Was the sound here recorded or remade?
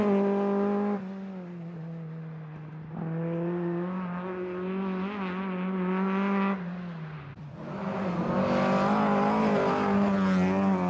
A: recorded